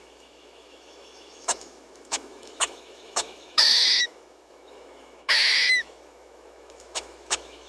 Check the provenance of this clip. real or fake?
fake